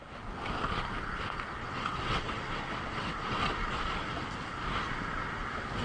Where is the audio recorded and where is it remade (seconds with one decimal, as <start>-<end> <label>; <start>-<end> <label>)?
0.0-1.6 recorded; 1.6-3.8 remade; 3.8-5.8 recorded